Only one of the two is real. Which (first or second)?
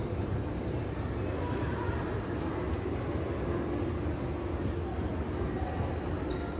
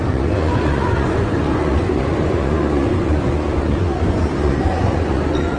first